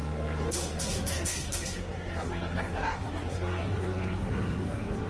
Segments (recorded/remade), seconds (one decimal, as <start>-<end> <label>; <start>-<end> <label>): 0.0-5.1 remade